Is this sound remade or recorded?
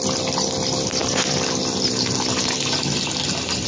recorded